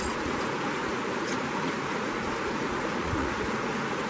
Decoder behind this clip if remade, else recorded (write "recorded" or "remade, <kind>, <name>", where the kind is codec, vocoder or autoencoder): remade, vocoder, Vocos